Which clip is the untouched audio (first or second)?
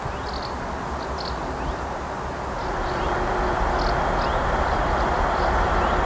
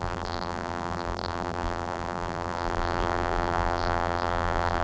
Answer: first